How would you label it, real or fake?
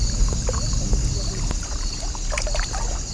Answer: real